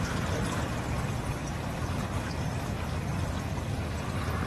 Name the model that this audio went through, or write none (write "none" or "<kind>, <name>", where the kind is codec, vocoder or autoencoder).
none